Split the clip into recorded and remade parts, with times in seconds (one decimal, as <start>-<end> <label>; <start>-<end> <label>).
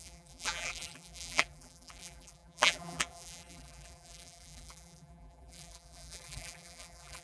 0.0-7.2 remade